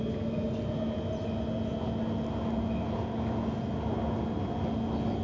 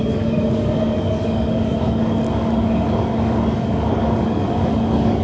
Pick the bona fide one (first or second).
first